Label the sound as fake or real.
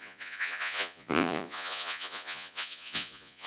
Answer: fake